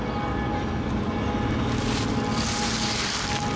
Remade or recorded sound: recorded